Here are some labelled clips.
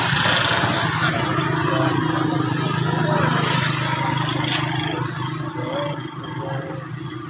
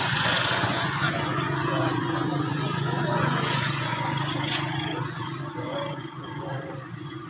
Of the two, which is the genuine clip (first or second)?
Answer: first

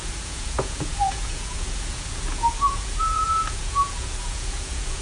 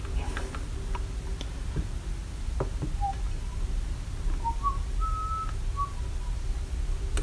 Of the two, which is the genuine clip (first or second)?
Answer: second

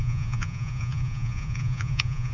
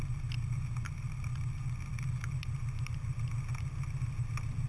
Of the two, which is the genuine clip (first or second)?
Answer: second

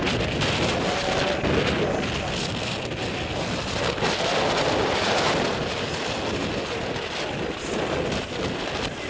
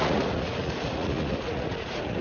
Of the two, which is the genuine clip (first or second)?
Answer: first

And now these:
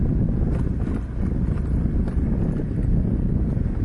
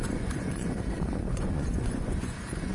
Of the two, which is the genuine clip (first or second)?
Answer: first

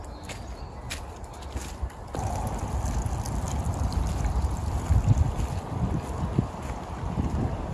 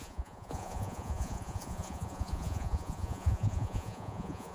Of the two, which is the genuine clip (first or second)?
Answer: first